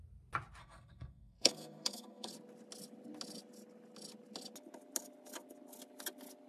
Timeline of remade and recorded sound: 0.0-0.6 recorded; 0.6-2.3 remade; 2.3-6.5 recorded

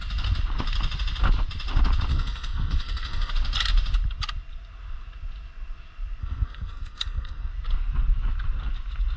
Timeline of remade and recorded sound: 0.0-2.1 recorded; 2.1-3.3 remade; 3.3-6.2 recorded; 6.2-7.5 remade; 7.5-9.2 recorded

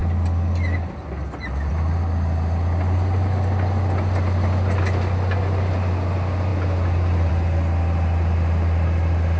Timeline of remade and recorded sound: 0.0-9.4 recorded

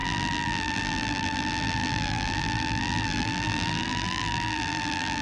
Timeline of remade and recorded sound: 0.0-5.2 remade

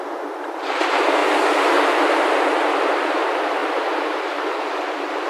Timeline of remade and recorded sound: 0.0-1.2 remade; 1.2-2.8 recorded; 2.8-3.6 remade; 3.6-4.1 recorded; 4.1-5.3 remade

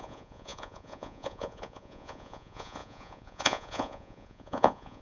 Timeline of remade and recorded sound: 0.0-5.0 remade